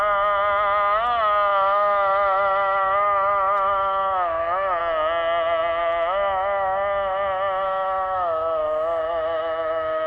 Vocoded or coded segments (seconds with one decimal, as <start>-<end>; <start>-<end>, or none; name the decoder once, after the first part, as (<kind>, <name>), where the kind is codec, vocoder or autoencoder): 1.5-4.8 (autoencoder, DAC-VAE); 5.8-10.1